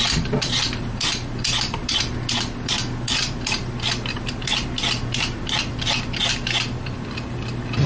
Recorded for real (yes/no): no